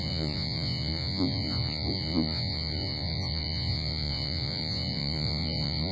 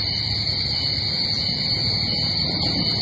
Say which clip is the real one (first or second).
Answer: second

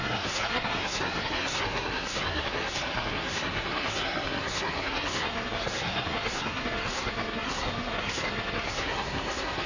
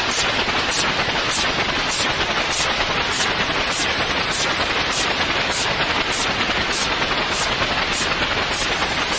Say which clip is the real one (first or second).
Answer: second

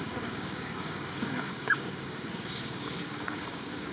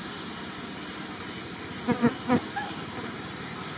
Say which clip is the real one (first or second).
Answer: second